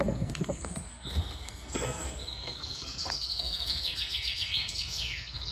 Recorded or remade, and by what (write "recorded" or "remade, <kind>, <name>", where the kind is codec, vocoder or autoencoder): remade, codec, SNAC